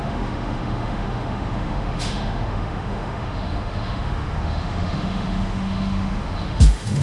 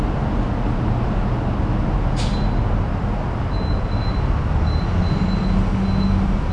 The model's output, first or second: first